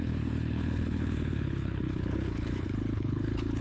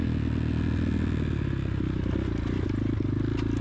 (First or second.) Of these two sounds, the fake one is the first